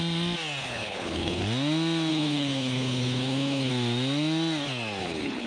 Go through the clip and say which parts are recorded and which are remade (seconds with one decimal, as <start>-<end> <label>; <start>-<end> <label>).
0.0-0.6 recorded; 0.6-1.4 remade; 1.4-2.1 recorded; 2.1-3.7 remade; 3.7-5.0 recorded; 5.0-5.5 remade